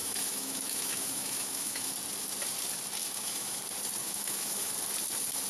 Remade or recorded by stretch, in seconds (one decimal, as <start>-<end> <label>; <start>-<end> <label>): 0.0-1.9 remade; 1.9-3.0 recorded; 3.0-3.6 remade; 3.6-4.0 recorded; 4.0-4.7 remade; 4.7-5.5 recorded